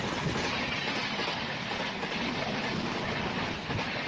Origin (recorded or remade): remade